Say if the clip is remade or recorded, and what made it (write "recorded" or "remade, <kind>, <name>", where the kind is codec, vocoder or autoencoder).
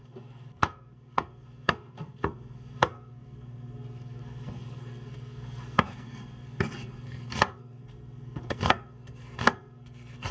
remade, codec, SNAC